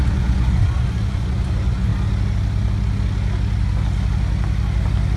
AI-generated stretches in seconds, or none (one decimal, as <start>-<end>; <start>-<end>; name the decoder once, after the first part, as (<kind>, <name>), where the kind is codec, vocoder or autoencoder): 0.0-1.9 (vocoder, Vocos)

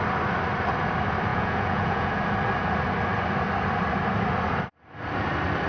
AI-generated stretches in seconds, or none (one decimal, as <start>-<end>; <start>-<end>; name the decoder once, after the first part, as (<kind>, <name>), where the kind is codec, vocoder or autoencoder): 1.3-2.2 (vocoder, Vocos)

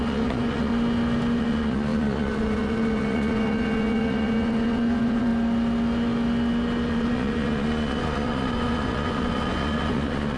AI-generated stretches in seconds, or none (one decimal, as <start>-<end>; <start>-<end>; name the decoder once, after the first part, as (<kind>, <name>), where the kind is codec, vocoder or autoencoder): 0.0-0.7 (vocoder, Vocos); 1.4-5.3; 6.9-10.4